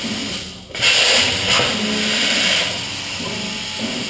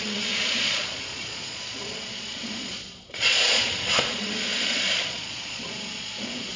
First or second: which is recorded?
first